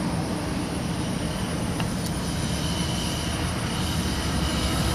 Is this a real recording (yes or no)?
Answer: yes